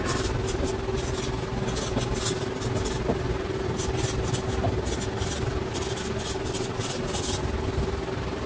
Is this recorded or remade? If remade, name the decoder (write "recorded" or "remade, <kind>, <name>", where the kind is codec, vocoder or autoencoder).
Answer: recorded